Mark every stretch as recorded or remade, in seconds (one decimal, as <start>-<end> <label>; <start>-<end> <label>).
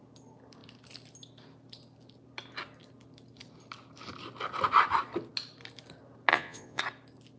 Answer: 0.0-6.3 recorded; 6.3-6.8 remade; 6.8-7.4 recorded